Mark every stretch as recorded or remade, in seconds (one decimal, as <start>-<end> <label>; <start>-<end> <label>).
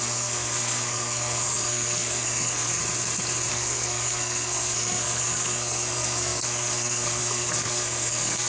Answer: 0.0-2.8 remade; 2.8-3.5 recorded; 3.5-8.5 remade